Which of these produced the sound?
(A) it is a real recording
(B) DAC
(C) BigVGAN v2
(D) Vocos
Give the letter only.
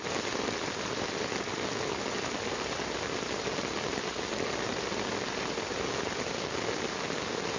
A